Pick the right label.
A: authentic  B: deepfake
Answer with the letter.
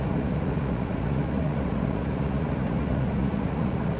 B